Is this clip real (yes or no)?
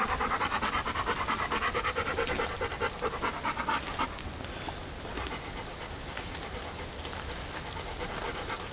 yes